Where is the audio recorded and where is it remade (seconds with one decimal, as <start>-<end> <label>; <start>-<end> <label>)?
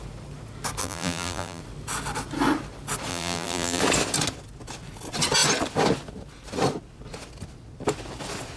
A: 0.0-0.8 recorded; 0.8-1.6 remade; 1.6-3.1 recorded; 3.1-3.8 remade; 3.8-8.6 recorded